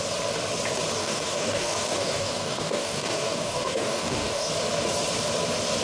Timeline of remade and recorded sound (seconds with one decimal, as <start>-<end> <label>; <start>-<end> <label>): 0.0-1.0 recorded; 1.0-4.5 remade; 4.5-5.8 recorded